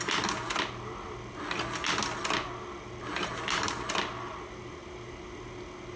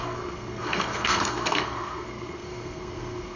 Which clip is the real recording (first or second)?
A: first